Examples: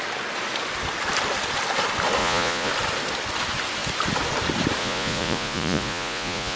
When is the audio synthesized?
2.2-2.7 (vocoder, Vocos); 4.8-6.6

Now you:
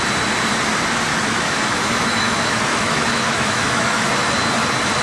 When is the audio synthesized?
1.1-4.1 (autoencoder, DAC-VAE)

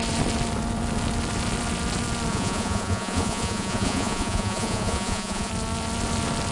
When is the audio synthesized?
2.3-5.5 (vocoder, Vocos)

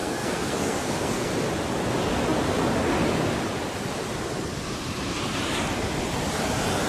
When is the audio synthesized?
0.0-1.3 (codec, SNAC)

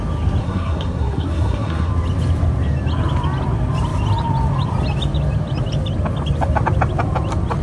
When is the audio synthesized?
0.4-1.9 (codec, SNAC)

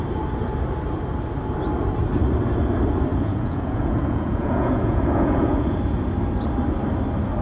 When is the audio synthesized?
3.1-5.8 (vocoder, Vocos)

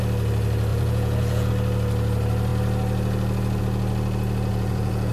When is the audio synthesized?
0.7-1.5 (vocoder, Vocos); 4.5-5.1

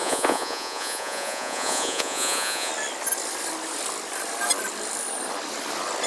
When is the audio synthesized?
0.0-2.7 (vocoder, Vocos)